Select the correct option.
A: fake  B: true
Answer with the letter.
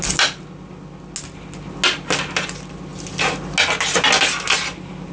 B